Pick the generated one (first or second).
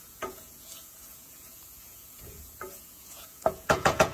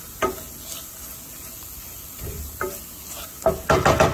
first